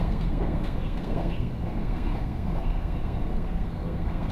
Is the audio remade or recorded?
remade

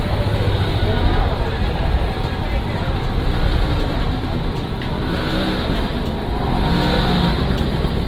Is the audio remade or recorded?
recorded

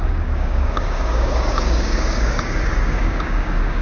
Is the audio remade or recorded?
remade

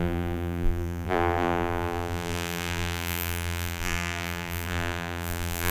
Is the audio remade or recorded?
remade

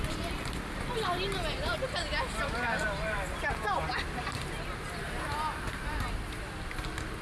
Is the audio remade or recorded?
recorded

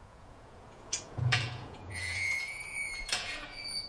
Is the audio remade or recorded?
remade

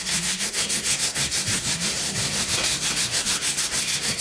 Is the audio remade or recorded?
remade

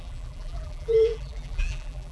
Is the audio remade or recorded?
remade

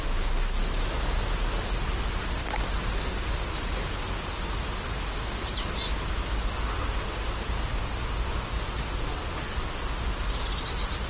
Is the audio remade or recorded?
recorded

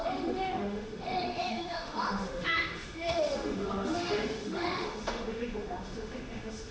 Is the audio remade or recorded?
remade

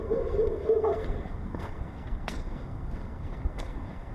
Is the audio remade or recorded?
remade